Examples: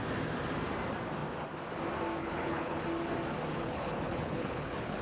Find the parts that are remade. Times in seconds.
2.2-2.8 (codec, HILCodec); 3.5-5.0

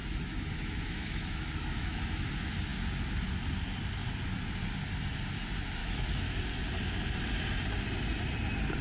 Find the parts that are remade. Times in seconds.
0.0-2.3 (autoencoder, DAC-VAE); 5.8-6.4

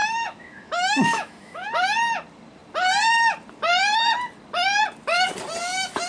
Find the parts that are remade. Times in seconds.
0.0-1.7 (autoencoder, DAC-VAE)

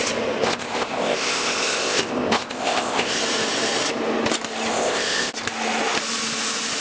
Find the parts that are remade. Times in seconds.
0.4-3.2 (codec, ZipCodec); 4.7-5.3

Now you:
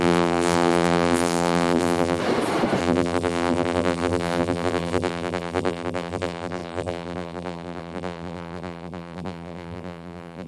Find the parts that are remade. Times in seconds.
0.0-2.2 (vocoder, BigVGAN v2); 2.8-10.5

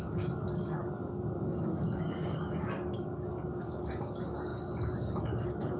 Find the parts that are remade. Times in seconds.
0.0-5.8 (codec, DAC)